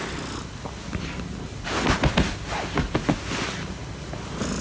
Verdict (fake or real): real